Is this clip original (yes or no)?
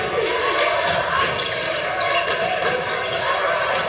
yes